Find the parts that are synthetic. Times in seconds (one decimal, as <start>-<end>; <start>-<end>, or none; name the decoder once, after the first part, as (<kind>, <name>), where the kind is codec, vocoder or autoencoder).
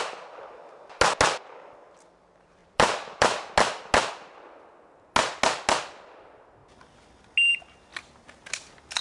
2.6-3.5 (vocoder, BigVGAN v2); 7.9-8.5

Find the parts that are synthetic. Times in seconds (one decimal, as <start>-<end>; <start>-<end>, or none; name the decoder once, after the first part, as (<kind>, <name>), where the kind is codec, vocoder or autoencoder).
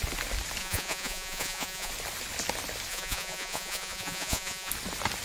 0.6-1.9 (vocoder, Vocos); 2.9-4.7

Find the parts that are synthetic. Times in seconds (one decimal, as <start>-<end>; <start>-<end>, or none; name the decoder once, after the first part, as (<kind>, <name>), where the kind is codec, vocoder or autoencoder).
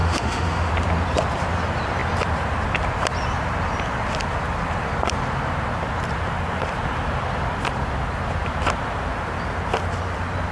0.0-0.7 (autoencoder, DAC-VAE)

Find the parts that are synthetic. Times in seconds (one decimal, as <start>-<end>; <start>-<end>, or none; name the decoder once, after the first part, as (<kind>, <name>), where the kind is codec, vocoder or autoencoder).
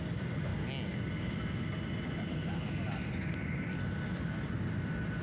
none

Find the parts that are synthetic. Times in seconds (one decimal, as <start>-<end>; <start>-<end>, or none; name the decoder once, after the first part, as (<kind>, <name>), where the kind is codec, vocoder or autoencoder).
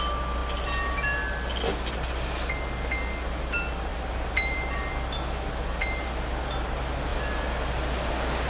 3.9-4.9 (vocoder, BigVGAN v2)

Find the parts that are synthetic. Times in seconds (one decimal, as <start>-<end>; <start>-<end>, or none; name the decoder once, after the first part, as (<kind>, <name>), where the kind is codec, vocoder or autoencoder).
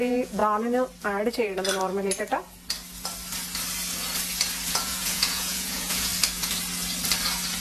0.0-0.4 (vocoder, Vocos); 4.7-6.1